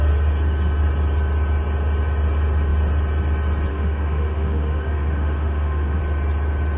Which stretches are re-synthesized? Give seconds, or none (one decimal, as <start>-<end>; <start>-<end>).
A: 3.7-6.0

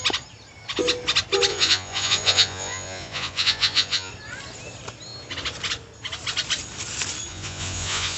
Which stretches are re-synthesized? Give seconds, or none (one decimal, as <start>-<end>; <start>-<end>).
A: 1.5-4.1; 7.3-8.2

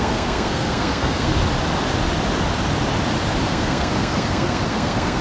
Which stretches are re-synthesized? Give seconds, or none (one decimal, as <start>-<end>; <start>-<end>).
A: 0.0-1.3; 3.5-5.2